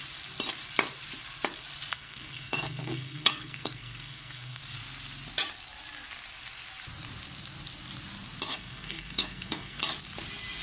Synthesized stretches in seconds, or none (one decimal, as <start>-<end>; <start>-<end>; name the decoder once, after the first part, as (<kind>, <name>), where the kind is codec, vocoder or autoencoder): 1.9-4.6 (codec, SNAC); 8.5-9.8